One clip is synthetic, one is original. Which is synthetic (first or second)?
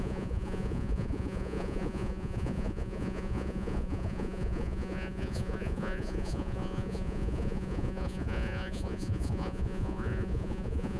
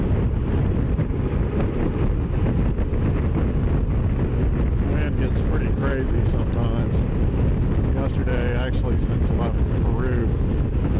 first